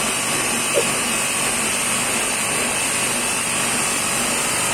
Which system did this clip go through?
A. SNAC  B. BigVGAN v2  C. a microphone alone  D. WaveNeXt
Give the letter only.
C